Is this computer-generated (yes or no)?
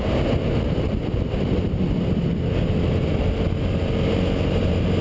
no